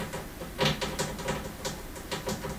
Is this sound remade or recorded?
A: recorded